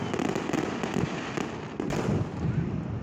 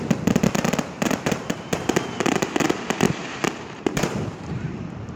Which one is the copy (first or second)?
second